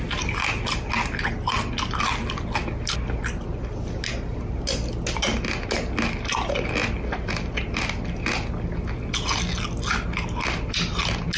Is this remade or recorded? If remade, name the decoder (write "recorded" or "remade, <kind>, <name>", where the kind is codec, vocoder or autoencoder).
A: recorded